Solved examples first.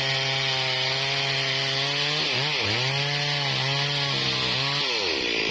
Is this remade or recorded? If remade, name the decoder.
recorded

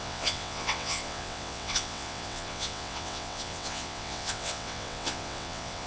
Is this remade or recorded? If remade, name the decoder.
remade, vocoder, WaveNeXt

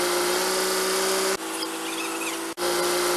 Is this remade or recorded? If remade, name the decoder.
recorded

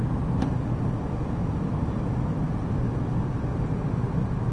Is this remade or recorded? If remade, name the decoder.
recorded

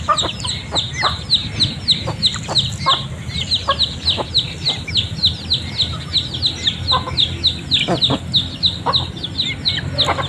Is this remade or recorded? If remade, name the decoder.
recorded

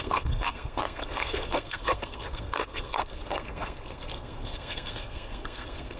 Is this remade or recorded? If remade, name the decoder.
remade, codec, SNAC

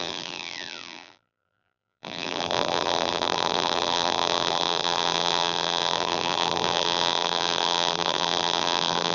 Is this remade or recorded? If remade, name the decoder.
remade, vocoder, BigVGAN v2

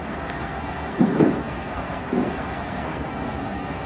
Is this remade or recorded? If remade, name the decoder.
remade, codec, SNAC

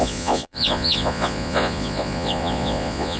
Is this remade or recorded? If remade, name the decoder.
remade, vocoder, Vocos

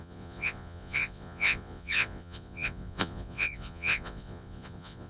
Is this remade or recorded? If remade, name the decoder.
remade, vocoder, Vocos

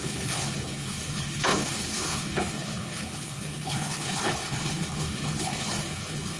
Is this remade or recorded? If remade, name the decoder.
remade, codec, HILCodec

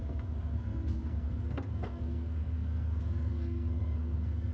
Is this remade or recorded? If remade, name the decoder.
remade, codec, SNAC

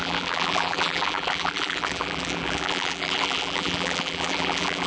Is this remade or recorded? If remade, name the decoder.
remade, vocoder, BigVGAN v2